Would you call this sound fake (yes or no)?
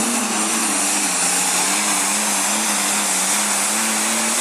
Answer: no